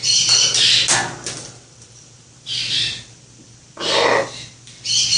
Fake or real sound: real